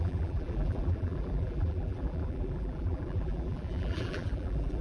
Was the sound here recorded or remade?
remade